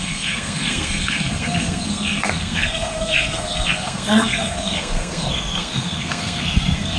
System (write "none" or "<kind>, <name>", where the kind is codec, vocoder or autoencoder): codec, SNAC